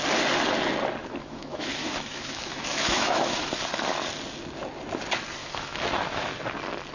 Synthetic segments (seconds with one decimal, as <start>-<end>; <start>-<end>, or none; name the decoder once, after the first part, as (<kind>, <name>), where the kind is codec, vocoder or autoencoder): 1.0-3.6 (autoencoder, DAC-VAE); 5.4-6.3